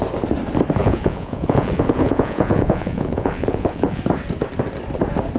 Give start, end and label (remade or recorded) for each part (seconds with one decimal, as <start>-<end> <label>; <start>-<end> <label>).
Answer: 0.0-0.8 recorded; 0.8-4.0 remade; 4.0-5.4 recorded